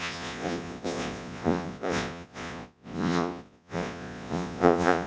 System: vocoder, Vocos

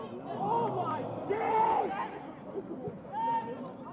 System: none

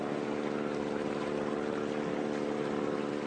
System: none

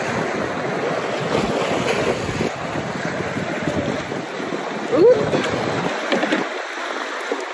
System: none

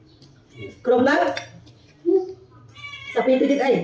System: none